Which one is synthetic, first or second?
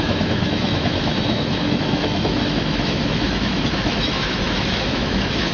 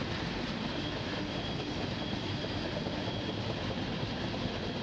first